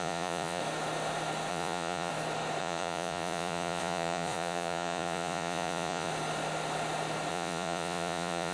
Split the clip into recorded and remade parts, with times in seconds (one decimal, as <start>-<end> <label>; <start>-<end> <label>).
0.0-0.6 remade; 0.6-1.5 recorded; 1.5-2.1 remade; 2.1-2.6 recorded; 2.6-6.1 remade; 6.1-7.3 recorded; 7.3-8.5 remade